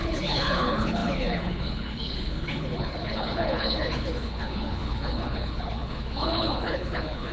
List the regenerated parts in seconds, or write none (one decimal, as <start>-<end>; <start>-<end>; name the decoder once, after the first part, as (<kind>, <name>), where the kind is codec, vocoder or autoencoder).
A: 0.0-7.3 (codec, HILCodec)